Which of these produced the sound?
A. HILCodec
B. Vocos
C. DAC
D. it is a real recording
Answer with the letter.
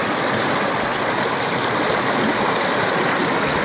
D